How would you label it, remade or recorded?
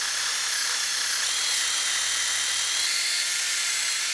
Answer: recorded